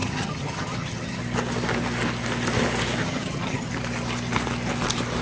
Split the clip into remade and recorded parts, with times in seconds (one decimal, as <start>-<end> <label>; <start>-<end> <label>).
0.0-1.2 remade; 1.2-3.0 recorded; 3.0-3.7 remade; 3.7-5.2 recorded